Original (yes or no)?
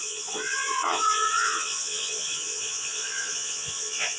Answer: no